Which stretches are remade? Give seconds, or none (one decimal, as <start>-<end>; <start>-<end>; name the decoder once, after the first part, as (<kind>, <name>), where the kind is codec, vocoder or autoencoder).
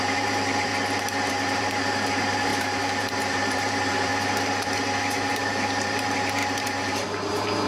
0.0-0.7 (vocoder, BigVGAN v2); 1.3-4.1; 5.3-7.7